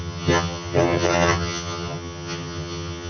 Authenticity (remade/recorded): remade